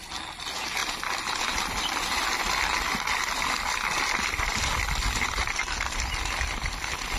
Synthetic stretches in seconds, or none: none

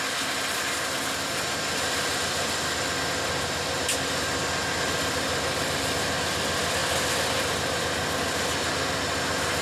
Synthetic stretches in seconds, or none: none

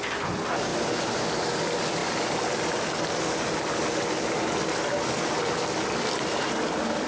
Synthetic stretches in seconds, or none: none

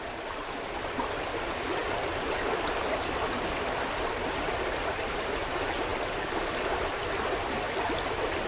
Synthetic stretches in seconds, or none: none

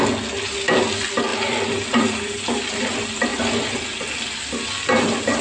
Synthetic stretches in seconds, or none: 1.3-2.8 (vocoder, BigVGAN v2)

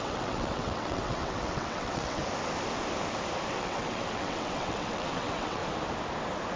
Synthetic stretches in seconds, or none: 0.0-2.2 (vocoder, WaveNeXt); 3.5-5.6